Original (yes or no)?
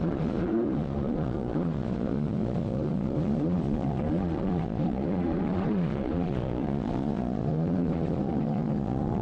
no